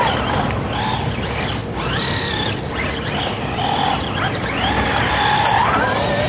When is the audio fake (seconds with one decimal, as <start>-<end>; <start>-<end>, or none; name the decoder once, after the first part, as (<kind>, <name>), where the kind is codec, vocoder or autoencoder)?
1.6-5.2 (vocoder, BigVGAN v2)